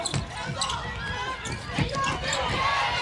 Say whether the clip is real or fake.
fake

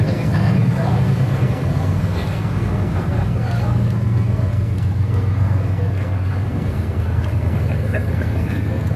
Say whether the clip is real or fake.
fake